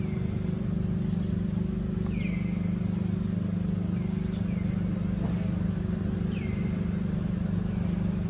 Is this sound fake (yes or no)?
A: no